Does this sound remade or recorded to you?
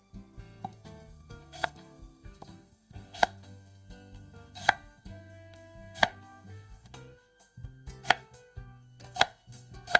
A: remade